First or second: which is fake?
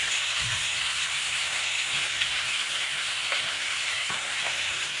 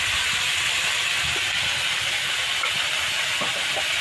first